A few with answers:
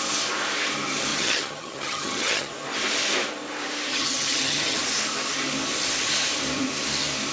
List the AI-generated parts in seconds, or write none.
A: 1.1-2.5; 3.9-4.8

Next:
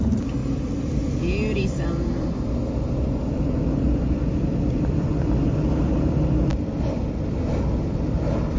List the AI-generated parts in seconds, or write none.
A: none

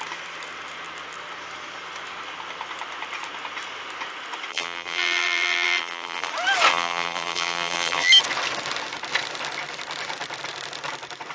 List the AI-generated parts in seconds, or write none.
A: 4.5-6.3; 6.7-8.1

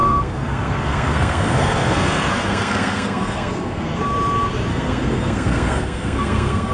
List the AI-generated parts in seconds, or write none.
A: 0.0-4.0; 4.7-6.7

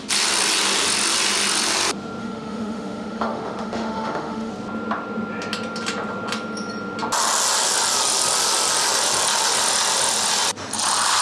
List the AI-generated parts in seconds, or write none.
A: 2.2-4.5